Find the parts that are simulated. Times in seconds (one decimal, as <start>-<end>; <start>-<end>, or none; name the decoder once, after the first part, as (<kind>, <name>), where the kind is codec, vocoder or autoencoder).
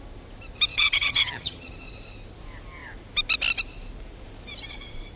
0.7-1.7 (vocoder, HiFi-GAN)